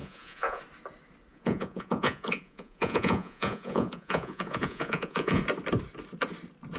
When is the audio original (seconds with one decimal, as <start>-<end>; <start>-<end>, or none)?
0.6-1.3; 5.4-6.8